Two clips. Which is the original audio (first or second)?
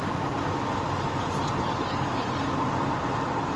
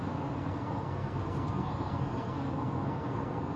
first